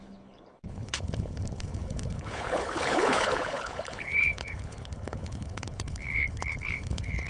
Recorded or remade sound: remade